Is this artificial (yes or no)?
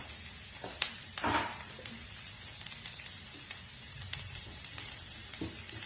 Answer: no